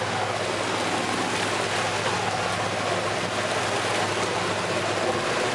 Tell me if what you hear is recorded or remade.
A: recorded